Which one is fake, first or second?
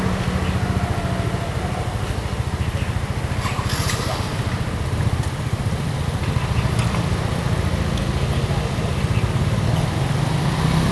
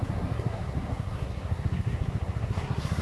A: second